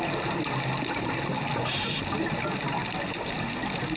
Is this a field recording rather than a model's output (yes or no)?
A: yes